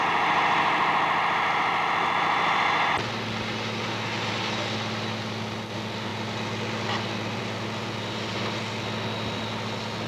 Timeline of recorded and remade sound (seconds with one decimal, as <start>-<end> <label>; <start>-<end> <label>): 0.0-10.1 recorded